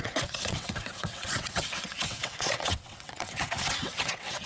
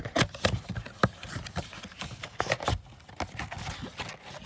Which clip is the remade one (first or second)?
first